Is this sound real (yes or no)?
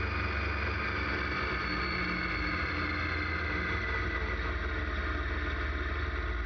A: yes